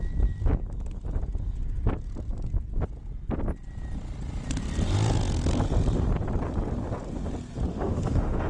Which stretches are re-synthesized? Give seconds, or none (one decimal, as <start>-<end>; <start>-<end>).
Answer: 7.7-8.5